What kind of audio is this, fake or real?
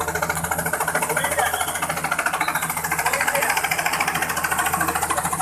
real